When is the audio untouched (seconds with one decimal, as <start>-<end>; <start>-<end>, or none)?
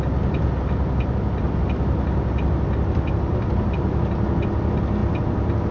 0.0-5.7